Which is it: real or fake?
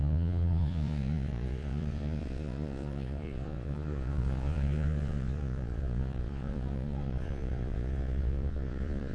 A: fake